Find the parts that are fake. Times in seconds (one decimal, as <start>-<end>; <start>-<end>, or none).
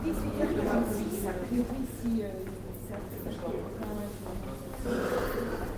0.5-1.6